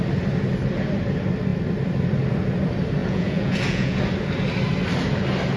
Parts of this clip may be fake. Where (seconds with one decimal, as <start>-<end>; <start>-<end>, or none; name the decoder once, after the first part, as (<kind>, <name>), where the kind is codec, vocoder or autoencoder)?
3.0-4.0 (vocoder, Vocos)